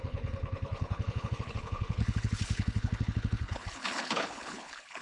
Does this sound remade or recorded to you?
remade